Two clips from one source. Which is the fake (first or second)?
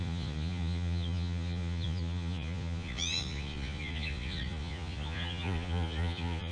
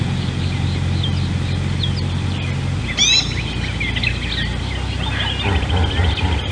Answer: first